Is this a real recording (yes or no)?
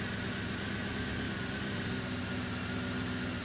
yes